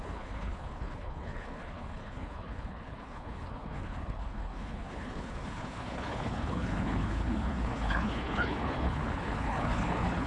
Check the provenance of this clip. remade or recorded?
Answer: remade